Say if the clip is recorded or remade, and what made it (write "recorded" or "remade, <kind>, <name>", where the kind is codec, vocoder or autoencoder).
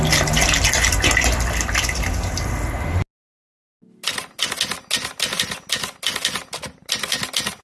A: recorded